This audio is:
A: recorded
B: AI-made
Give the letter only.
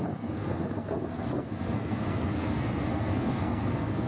B